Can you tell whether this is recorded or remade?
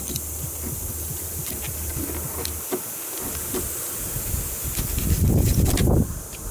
recorded